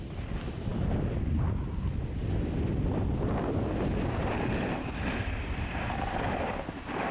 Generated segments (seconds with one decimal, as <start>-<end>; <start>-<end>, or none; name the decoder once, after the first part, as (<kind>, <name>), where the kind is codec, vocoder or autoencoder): none